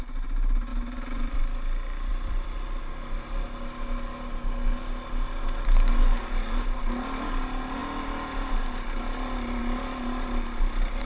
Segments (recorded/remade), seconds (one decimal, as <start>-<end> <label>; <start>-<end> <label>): 0.0-0.7 recorded; 0.7-1.4 remade; 1.4-2.1 recorded; 2.1-2.8 remade; 2.8-11.0 recorded